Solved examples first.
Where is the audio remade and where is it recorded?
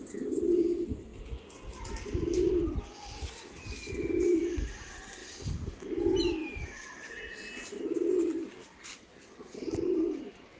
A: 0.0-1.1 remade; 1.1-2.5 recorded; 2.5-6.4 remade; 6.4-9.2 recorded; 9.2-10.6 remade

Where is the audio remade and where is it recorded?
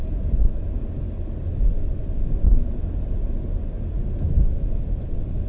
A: 0.0-5.5 recorded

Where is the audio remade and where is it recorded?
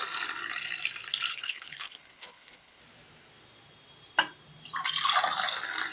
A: 0.0-1.3 recorded; 1.3-2.8 remade; 2.8-5.9 recorded